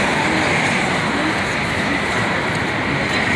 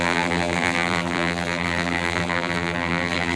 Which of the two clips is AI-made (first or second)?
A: second